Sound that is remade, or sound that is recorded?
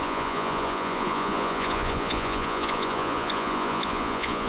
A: remade